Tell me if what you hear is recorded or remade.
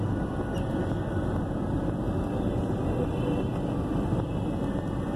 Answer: recorded